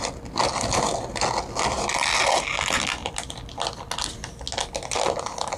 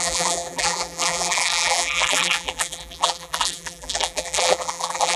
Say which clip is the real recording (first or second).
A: first